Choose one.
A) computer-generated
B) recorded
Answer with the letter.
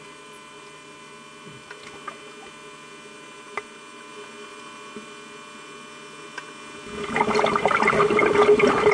B